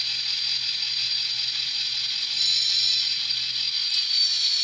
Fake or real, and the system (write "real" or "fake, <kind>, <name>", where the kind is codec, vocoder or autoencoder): real